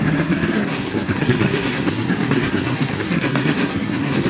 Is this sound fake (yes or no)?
yes